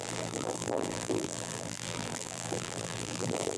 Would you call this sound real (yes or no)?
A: no